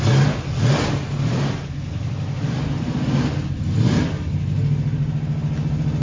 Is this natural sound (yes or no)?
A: yes